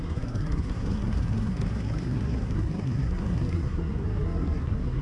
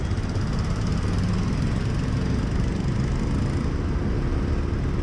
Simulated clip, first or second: first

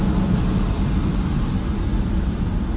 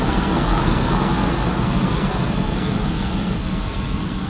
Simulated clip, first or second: second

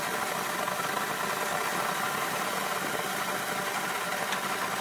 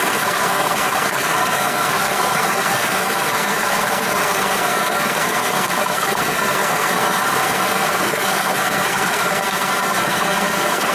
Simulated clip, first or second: second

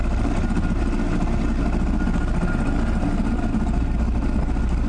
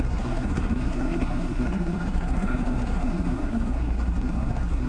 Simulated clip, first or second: second